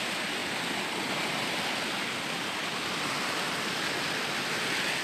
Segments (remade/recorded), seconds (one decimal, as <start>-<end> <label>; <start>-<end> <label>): 0.0-5.0 recorded